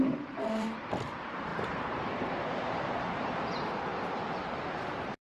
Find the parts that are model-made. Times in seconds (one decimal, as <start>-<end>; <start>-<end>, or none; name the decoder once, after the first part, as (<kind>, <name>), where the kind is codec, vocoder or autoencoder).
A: 0.0-5.3 (vocoder, BigVGAN v2)